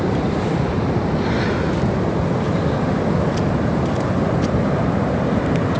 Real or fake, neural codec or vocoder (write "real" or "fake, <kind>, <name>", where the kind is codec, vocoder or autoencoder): real